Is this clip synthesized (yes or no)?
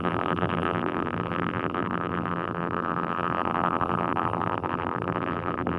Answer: yes